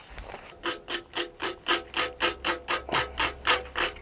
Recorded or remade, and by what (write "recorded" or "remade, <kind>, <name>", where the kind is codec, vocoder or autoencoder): recorded